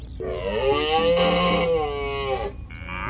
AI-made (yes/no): no